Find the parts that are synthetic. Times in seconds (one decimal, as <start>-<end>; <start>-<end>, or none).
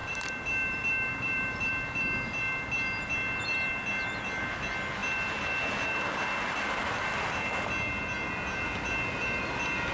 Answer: 0.0-1.7